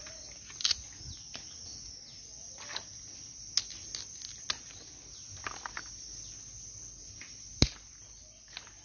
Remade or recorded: recorded